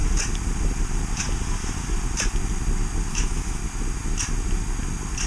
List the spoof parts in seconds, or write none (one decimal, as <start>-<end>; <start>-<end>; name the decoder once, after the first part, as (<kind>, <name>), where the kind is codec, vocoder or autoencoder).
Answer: 3.1-3.6 (autoencoder, DAC-VAE)

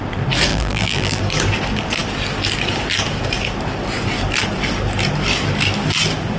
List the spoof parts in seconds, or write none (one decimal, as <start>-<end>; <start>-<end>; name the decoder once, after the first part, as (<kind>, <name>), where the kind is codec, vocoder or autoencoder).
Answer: 0.5-1.2 (vocoder, BigVGAN v2)

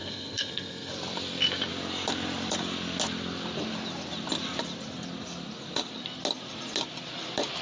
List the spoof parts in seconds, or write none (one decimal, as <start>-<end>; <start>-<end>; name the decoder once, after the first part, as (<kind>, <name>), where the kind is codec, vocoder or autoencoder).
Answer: 0.0-0.9 (codec, SNAC)

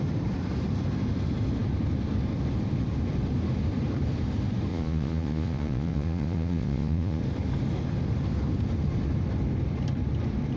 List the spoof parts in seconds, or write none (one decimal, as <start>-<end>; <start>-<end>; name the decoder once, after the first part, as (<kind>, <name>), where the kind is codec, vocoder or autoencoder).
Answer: 4.7-7.2 (vocoder, Vocos)

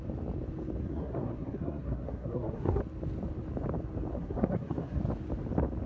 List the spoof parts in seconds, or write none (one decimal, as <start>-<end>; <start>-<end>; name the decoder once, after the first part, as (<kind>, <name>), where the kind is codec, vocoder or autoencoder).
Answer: 0.8-2.8 (codec, SNAC); 4.1-5.0